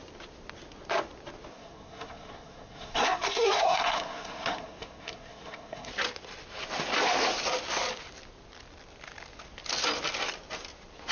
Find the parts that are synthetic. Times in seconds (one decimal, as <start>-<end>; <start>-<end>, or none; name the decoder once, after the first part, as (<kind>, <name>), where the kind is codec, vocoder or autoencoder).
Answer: 1.5-5.9 (codec, SNAC)